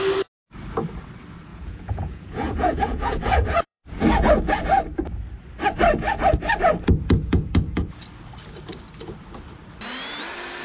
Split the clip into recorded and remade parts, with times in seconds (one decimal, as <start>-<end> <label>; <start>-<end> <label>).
0.0-1.5 recorded; 1.5-4.8 remade; 4.8-10.6 recorded